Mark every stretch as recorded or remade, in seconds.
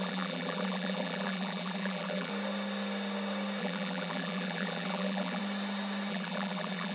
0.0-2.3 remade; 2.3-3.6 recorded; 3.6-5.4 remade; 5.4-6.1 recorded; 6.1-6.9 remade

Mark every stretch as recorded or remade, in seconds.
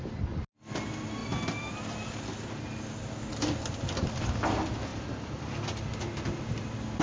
0.0-0.7 remade; 0.7-4.9 recorded; 4.9-5.5 remade; 5.5-7.0 recorded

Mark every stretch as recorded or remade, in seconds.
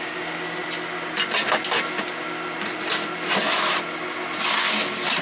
0.0-5.2 recorded